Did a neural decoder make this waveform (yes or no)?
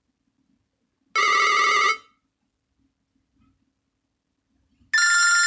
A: no